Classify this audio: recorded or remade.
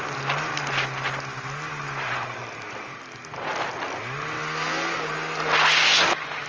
recorded